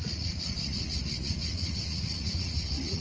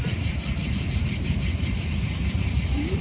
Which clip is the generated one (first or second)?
first